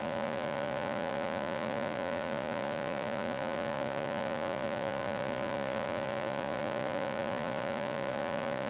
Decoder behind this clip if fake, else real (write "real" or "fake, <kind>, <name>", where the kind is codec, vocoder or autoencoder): fake, vocoder, Vocos